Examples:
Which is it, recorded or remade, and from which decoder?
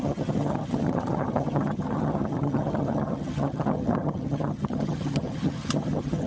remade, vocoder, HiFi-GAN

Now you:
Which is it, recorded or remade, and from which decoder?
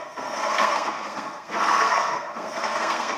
remade, codec, SNAC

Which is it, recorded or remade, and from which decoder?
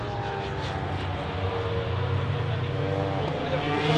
recorded